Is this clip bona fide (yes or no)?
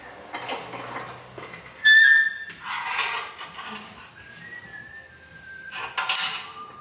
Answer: yes